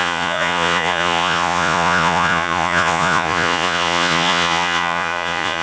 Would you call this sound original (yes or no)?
no